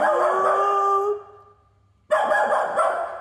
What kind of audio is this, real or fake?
real